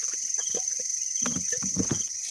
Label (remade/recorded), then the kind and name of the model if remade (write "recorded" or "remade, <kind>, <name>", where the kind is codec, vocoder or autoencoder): recorded